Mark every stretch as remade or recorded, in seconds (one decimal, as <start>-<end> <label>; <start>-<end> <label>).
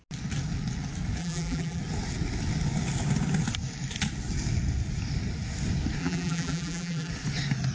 0.0-1.2 recorded; 1.2-1.8 remade; 1.8-6.0 recorded; 6.0-7.1 remade; 7.1-7.7 recorded